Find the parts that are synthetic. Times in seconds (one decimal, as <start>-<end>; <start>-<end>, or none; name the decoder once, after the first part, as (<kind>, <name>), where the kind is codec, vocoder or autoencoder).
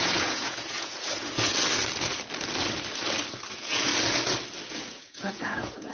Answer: 0.0-1.5 (vocoder, Vocos); 3.5-3.9; 4.7-5.9